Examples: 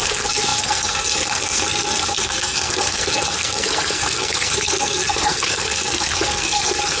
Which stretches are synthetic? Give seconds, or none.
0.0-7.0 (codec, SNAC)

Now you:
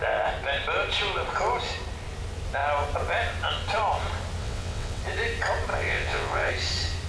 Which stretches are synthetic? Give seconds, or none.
4.4-5.0 (vocoder, WaveNeXt); 5.7-6.5